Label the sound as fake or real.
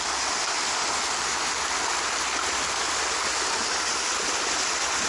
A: real